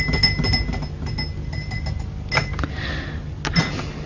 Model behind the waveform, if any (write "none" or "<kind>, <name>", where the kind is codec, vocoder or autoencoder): none